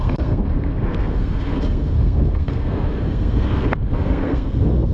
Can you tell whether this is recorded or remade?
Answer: remade